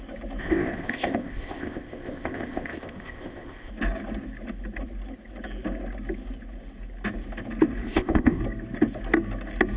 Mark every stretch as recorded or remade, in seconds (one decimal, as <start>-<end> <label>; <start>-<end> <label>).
0.0-0.4 recorded; 0.4-3.7 remade; 3.7-7.9 recorded; 7.9-8.4 remade; 8.4-9.8 recorded